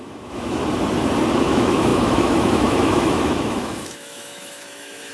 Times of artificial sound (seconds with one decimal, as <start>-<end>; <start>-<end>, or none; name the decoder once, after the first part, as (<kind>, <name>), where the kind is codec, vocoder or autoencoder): 0.0-0.6 (autoencoder, DAC-VAE); 1.4-5.1